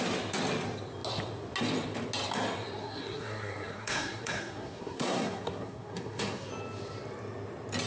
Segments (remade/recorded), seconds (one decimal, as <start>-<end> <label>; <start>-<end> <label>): 0.0-2.8 recorded; 2.8-6.5 remade; 6.5-7.9 recorded